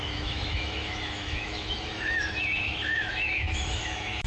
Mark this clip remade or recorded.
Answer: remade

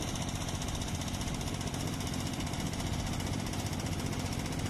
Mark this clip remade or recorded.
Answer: recorded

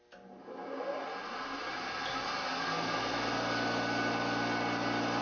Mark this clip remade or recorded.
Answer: recorded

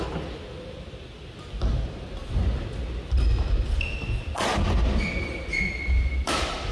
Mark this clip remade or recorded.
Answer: recorded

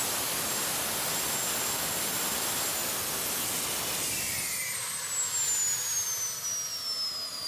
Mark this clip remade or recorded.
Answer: recorded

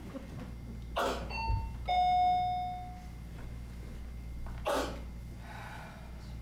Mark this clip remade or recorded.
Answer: recorded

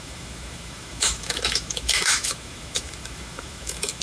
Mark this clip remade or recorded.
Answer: remade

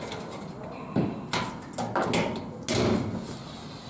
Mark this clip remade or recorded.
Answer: recorded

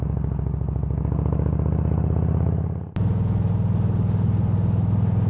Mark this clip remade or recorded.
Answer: recorded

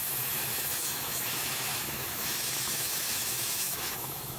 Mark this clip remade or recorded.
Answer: remade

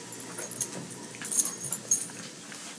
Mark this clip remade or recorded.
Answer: recorded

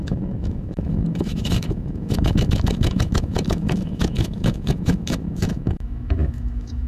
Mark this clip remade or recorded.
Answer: remade